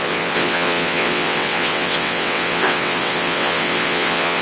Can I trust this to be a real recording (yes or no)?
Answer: no